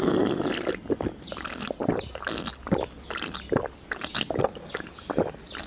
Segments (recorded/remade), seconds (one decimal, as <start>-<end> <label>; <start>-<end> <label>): 0.0-5.7 recorded